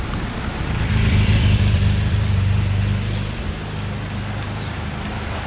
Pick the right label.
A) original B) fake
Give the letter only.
A